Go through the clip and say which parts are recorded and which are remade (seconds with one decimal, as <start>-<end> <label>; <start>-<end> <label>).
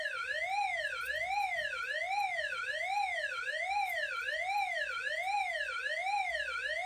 0.0-6.9 recorded